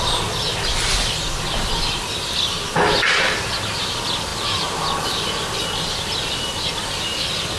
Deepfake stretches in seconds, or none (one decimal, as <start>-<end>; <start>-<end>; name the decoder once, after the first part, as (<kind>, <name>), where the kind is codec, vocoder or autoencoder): none